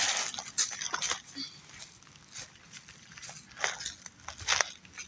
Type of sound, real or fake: real